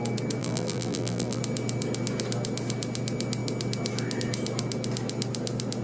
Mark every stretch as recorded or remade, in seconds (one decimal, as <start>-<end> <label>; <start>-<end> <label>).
0.0-0.4 recorded; 0.4-1.4 remade; 1.4-5.8 recorded